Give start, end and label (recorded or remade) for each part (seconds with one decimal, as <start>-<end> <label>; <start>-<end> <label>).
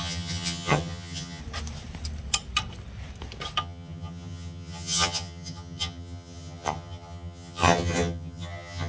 0.0-1.4 remade; 1.4-3.6 recorded; 3.6-8.9 remade